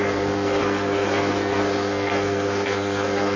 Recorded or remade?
remade